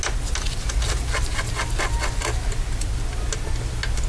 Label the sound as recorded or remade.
recorded